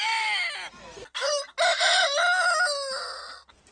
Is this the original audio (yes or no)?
yes